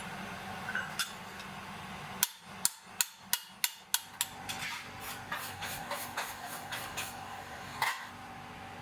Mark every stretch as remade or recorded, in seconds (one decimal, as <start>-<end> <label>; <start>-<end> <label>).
0.0-5.4 recorded; 5.4-8.1 remade; 8.1-8.8 recorded